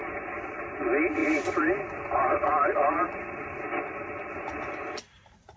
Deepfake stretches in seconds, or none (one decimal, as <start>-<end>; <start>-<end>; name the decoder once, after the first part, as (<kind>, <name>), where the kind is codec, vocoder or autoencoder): 1.2-4.6 (vocoder, BigVGAN v2)

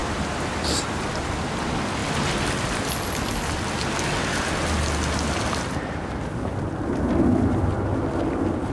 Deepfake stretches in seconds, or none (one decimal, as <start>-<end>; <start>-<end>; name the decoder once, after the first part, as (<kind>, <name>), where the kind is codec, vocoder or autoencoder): 0.0-1.1 (vocoder, BigVGAN v2); 2.0-3.3

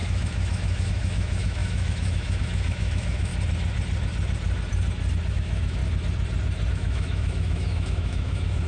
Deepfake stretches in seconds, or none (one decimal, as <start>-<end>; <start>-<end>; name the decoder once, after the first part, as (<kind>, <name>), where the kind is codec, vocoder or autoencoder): 0.0-3.3 (autoencoder, DAC-VAE); 5.3-5.8; 6.7-8.7

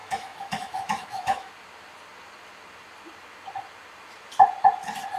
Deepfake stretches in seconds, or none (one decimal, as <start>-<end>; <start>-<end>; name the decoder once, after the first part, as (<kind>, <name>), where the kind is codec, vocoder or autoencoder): 0.0-1.5 (autoencoder, DAC-VAE)